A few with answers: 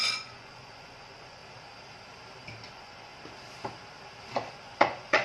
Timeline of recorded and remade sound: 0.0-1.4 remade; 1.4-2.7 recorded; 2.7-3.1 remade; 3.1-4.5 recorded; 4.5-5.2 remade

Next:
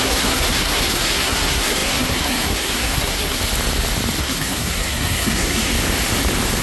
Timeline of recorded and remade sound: 0.0-3.4 remade; 3.4-4.2 recorded; 4.2-5.7 remade; 5.7-6.6 recorded

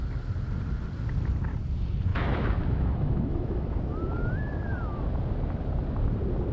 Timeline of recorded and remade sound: 0.0-2.1 recorded; 2.1-3.8 remade; 3.8-6.5 recorded